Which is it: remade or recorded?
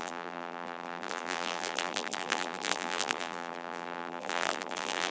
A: remade